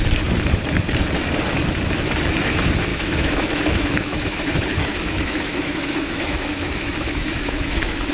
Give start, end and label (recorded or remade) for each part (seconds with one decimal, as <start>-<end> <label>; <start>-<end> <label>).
0.0-2.9 recorded; 2.9-4.5 remade; 4.5-4.9 recorded; 4.9-8.1 remade